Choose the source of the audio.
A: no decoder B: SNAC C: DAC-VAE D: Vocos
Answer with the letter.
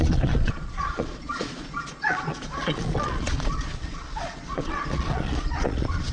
D